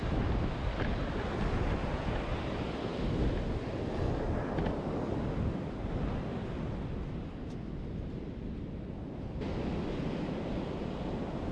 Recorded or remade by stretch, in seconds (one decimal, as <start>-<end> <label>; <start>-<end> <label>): 0.0-11.5 recorded